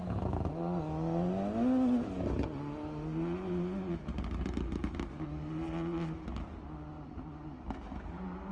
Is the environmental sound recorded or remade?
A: recorded